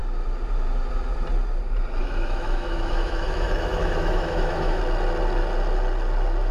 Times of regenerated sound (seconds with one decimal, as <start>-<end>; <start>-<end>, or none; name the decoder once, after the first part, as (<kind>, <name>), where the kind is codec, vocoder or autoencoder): 2.0-4.8 (autoencoder, DAC-VAE)